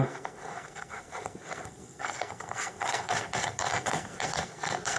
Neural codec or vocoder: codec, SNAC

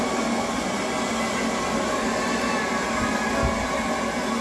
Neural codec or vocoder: none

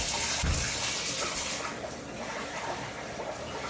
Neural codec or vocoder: none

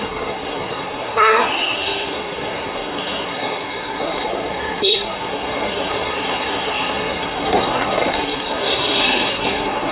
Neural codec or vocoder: codec, SNAC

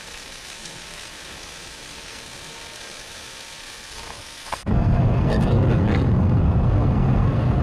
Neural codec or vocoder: codec, SNAC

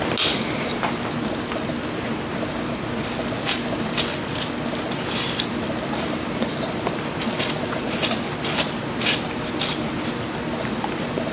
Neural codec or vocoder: none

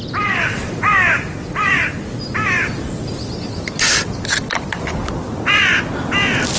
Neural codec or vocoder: none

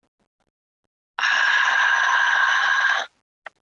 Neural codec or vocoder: none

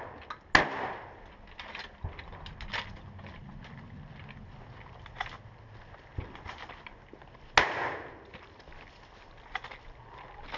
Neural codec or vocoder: none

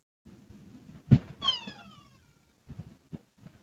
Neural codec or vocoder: none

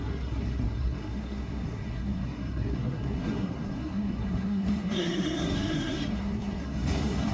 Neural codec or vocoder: codec, SNAC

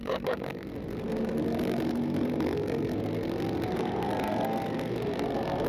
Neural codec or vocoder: codec, SNAC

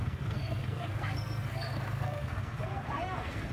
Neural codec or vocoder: codec, SNAC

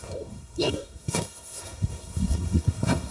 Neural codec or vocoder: codec, SNAC